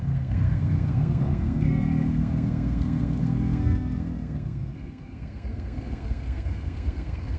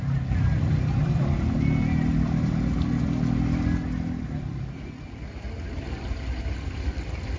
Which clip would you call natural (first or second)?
second